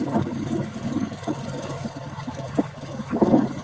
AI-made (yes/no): yes